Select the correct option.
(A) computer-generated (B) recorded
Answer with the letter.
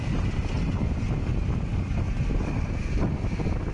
B